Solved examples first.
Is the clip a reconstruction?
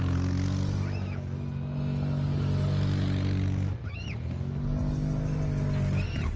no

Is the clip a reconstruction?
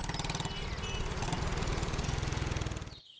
no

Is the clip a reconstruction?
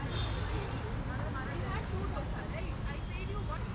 no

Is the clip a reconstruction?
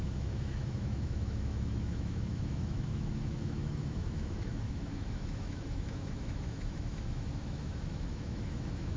yes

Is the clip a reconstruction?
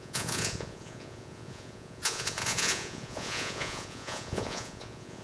yes